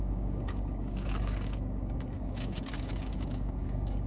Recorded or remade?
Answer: remade